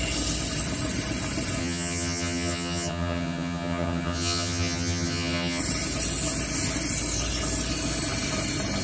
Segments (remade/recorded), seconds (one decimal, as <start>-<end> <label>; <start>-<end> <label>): 0.0-1.6 recorded; 1.6-5.6 remade; 5.6-8.8 recorded